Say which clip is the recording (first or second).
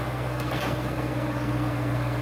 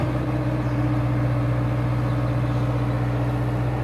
second